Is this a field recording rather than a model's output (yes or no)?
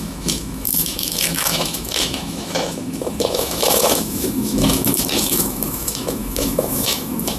no